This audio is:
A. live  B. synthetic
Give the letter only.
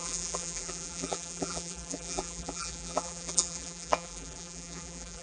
B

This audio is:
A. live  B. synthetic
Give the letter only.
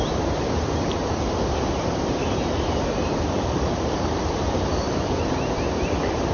B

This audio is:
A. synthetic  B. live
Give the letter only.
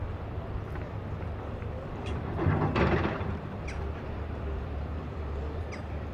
A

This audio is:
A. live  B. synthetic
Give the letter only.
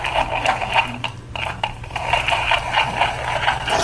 B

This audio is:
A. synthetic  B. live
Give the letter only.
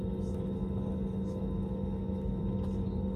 B